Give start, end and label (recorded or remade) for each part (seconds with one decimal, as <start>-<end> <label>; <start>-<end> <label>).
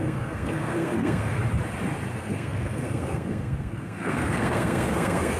0.0-1.4 remade; 1.4-2.1 recorded; 2.1-5.4 remade